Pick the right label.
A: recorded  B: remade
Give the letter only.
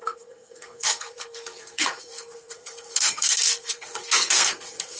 B